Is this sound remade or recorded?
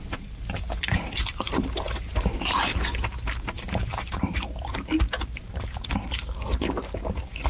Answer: remade